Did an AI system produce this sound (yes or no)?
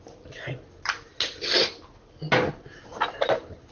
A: no